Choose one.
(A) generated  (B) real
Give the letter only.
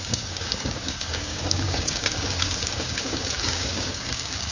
A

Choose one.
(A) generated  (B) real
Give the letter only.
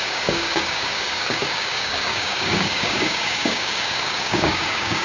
A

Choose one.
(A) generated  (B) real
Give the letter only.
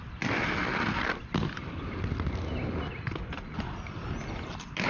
B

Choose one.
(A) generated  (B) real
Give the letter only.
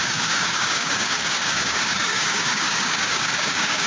A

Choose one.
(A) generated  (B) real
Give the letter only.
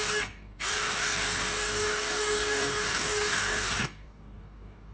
A